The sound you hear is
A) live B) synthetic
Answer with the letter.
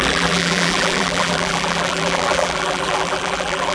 B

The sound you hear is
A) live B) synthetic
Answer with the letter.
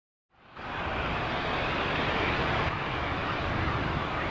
B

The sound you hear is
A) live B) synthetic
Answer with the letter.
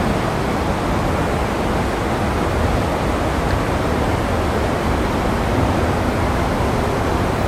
A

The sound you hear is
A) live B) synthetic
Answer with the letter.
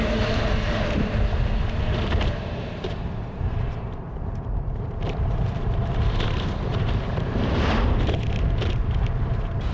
B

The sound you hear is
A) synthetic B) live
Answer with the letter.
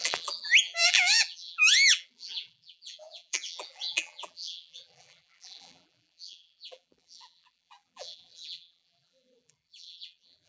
A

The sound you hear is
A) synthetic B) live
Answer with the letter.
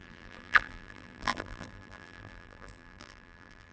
A